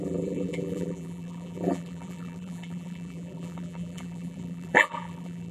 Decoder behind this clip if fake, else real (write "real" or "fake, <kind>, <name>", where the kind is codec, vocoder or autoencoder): fake, vocoder, BigVGAN v2